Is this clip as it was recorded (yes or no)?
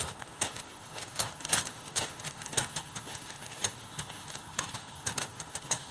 no